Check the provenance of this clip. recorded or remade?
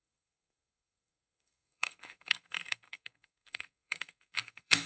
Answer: remade